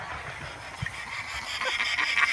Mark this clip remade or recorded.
recorded